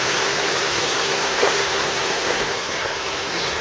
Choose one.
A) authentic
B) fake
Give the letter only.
B